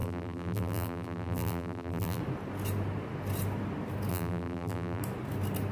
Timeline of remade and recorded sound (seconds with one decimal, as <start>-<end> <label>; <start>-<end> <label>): 0.0-2.2 remade; 2.2-4.1 recorded; 4.1-5.0 remade; 5.0-5.7 recorded